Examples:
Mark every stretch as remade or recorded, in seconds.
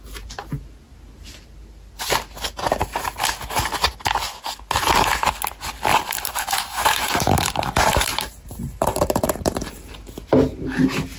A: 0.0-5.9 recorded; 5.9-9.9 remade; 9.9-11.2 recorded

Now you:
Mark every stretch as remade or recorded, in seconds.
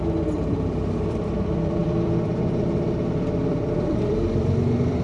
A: 0.0-5.0 remade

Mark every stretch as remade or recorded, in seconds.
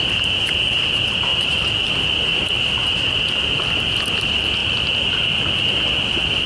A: 0.0-1.3 recorded; 1.3-1.9 remade; 1.9-2.3 recorded; 2.3-2.9 remade; 2.9-6.5 recorded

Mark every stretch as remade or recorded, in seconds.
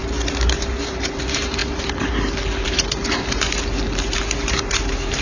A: 0.0-5.2 remade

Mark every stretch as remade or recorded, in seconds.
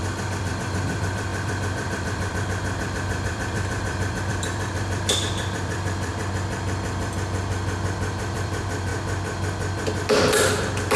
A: 0.0-6.1 remade; 6.1-8.2 recorded; 8.2-8.9 remade; 8.9-11.0 recorded